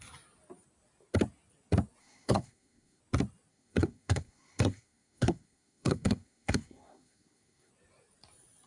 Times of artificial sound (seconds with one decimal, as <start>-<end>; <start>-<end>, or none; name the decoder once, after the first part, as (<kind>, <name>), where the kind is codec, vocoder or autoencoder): 2.0-3.0 (codec, SNAC); 3.5-7.7